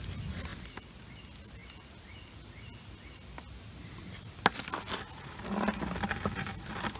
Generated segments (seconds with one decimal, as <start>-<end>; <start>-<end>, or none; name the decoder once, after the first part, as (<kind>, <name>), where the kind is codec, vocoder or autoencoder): none